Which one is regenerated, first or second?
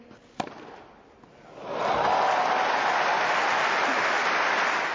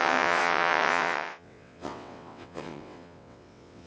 second